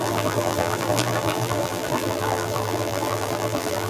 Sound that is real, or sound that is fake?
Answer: fake